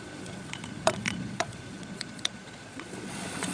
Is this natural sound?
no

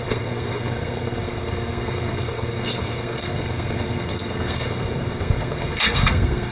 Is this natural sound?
no